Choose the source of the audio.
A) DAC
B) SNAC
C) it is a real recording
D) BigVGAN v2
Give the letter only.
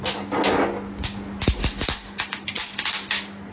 C